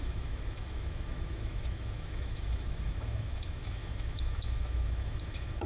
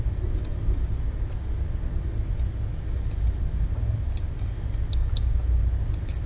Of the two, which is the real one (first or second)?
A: second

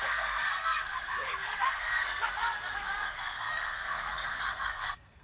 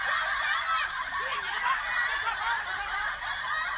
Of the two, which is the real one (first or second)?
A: second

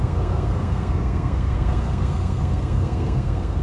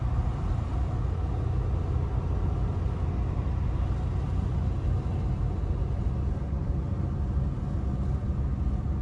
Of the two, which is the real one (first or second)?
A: second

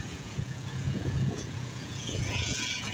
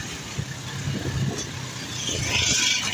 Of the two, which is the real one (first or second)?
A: second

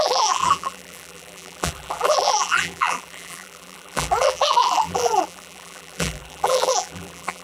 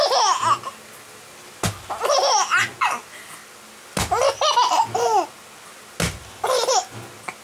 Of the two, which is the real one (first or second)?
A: second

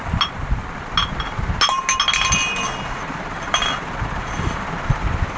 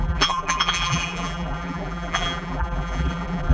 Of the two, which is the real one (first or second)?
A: first